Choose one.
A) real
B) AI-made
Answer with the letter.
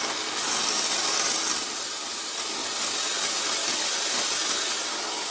A